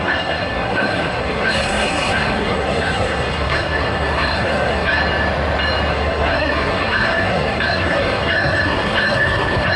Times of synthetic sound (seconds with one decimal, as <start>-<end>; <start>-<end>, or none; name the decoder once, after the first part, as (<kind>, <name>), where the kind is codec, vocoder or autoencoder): 0.0-5.0 (codec, SNAC); 5.9-9.8